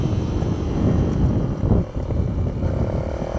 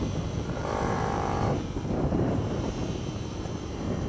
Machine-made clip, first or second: second